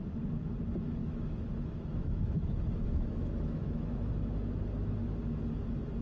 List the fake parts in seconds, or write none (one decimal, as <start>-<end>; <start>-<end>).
1.0-4.1